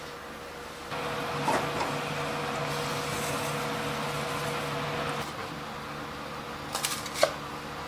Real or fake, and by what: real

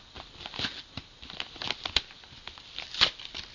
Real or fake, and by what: real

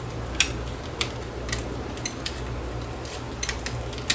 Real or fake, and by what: real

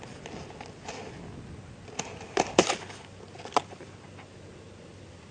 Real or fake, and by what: real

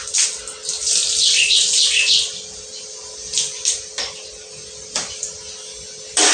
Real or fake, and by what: real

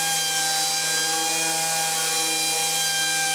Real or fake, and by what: real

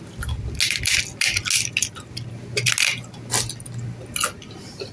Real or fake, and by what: real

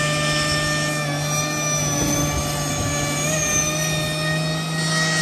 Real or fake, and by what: real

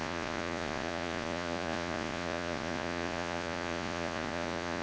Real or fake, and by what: fake, vocoder, Vocos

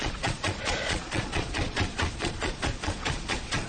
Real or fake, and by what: fake, vocoder, Vocos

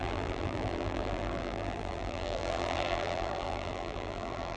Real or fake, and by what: fake, vocoder, BigVGAN v2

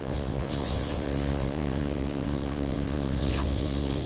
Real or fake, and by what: fake, vocoder, WaveNeXt